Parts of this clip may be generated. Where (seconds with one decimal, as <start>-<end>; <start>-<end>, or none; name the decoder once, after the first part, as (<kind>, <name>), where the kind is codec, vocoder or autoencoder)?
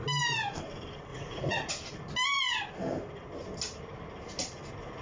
1.1-1.7 (vocoder, Vocos)